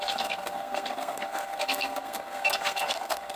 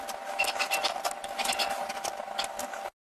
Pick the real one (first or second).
second